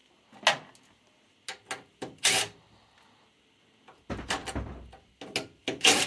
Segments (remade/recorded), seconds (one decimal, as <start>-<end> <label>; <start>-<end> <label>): 0.0-6.1 recorded